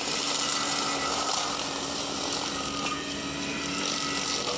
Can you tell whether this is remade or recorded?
recorded